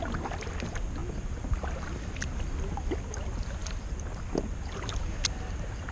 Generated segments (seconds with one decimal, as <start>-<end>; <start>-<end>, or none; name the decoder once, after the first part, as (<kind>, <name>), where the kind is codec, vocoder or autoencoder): none